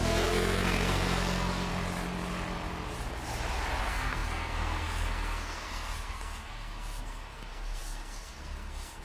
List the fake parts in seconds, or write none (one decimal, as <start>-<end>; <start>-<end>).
0.0-1.7; 3.8-9.0